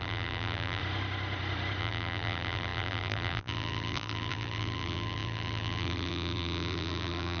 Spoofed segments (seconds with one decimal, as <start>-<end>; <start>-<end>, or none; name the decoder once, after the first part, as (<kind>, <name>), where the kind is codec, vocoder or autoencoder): 0.0-0.8 (vocoder, BigVGAN v2); 1.8-7.4